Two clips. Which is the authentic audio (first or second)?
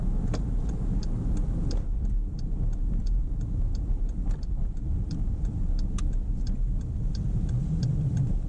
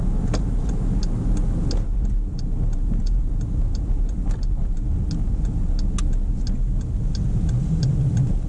second